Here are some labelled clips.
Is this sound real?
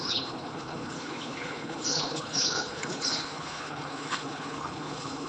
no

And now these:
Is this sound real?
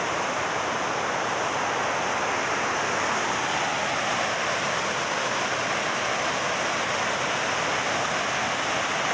yes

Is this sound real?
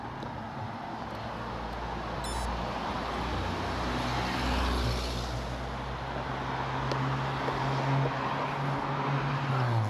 yes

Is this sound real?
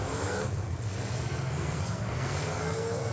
no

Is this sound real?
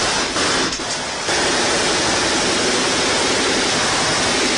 yes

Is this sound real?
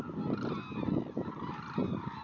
yes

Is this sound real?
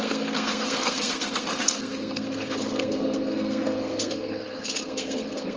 no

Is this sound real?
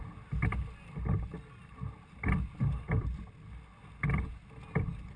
yes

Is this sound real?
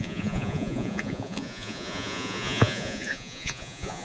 no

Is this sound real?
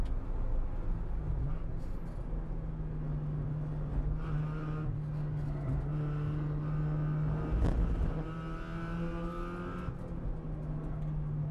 yes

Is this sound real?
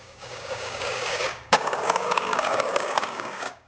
no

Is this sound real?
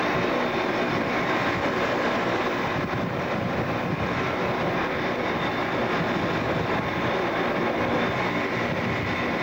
yes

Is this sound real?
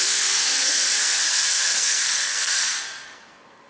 no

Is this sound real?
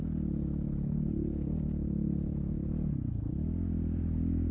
yes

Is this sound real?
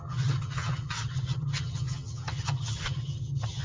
no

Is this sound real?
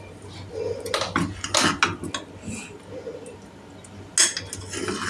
yes